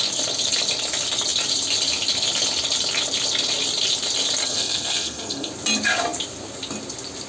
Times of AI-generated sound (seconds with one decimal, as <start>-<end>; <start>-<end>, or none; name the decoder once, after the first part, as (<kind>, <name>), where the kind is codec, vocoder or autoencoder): 4.4-5.5 (codec, SNAC)